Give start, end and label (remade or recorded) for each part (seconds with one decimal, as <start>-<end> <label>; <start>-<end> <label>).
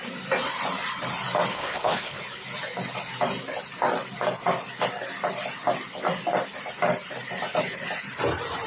0.0-1.5 recorded; 1.5-2.2 remade; 2.2-8.7 recorded